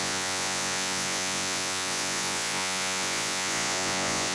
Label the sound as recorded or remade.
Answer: remade